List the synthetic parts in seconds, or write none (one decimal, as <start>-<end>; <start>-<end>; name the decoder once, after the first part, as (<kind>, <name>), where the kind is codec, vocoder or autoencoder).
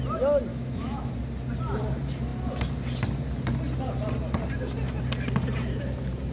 0.5-1.1 (autoencoder, DAC-VAE)